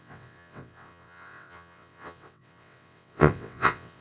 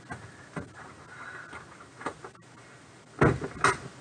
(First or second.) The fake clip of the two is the first